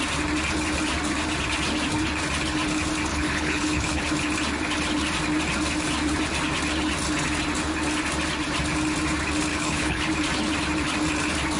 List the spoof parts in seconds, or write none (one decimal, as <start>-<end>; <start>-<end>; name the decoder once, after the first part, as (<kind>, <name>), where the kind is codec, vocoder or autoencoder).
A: 3.1-4.0 (codec, HILCodec); 9.5-10.1